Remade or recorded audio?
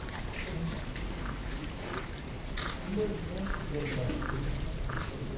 remade